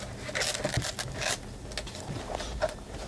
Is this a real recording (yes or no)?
yes